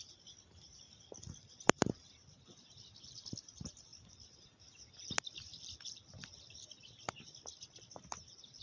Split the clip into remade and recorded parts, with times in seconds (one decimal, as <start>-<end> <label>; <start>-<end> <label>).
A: 0.0-8.6 recorded